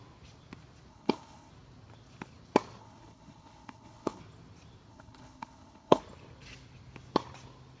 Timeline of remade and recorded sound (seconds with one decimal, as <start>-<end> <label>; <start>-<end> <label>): 0.0-0.9 recorded; 0.9-1.5 remade; 1.5-2.8 recorded; 2.8-4.2 remade; 4.2-4.9 recorded; 4.9-6.0 remade; 6.0-7.8 recorded